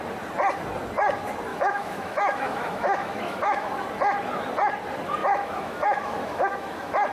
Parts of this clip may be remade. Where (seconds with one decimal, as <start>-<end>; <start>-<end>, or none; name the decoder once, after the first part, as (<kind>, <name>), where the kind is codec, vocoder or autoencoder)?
1.5-3.7 (autoencoder, DAC-VAE); 5.2-7.1